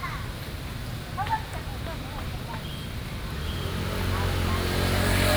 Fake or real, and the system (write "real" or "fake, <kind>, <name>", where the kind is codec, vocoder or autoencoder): real